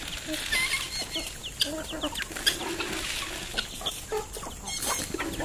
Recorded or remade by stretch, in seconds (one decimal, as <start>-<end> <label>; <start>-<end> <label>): 0.0-5.4 recorded